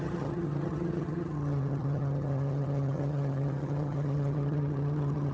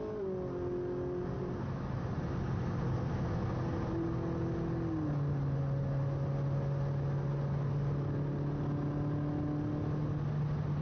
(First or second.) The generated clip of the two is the first